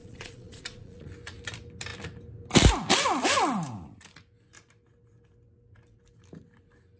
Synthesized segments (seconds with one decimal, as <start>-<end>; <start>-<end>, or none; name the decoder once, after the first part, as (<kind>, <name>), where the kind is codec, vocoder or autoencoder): 0.0-1.1 (vocoder, Vocos)